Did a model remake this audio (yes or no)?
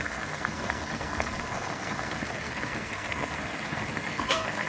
yes